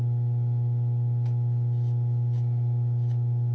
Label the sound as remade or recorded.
recorded